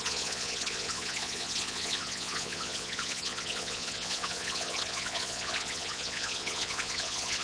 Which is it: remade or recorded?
remade